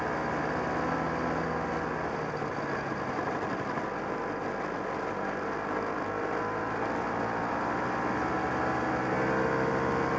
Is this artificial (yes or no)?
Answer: no